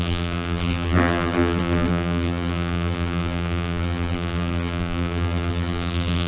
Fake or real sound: fake